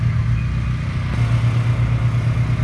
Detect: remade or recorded recorded